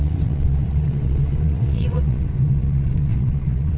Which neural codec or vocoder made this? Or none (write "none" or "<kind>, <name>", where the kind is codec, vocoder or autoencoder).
vocoder, WaveNeXt